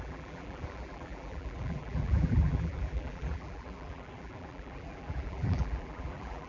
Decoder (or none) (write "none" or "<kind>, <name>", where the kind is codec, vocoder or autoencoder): vocoder, BigVGAN v2